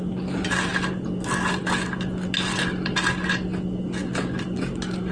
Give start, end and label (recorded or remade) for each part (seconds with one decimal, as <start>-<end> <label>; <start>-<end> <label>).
0.0-5.1 recorded